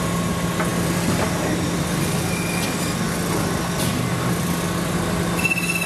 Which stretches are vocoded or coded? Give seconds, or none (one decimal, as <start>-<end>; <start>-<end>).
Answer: none